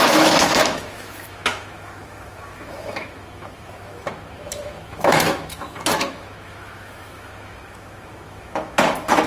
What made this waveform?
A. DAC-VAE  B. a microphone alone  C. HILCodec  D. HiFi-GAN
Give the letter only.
A